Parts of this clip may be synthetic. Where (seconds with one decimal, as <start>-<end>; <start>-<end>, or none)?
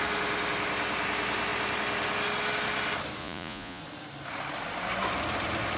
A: 3.2-3.8